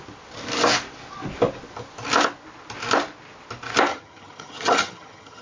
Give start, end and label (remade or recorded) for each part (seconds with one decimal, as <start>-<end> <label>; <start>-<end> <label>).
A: 0.0-3.9 recorded; 3.9-5.4 remade